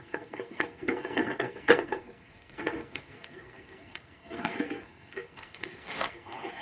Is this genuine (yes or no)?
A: no